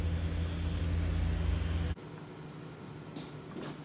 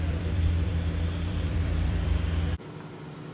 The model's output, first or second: second